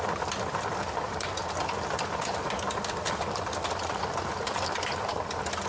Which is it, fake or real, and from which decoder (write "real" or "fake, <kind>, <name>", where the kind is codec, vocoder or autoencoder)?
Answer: real